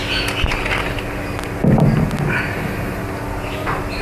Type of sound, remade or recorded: recorded